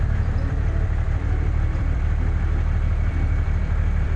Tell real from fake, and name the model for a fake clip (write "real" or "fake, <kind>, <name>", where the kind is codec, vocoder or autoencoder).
fake, vocoder, BigVGAN v2